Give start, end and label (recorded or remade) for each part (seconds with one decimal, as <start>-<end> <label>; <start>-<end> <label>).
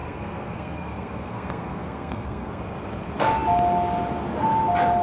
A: 0.0-2.6 remade; 2.6-5.0 recorded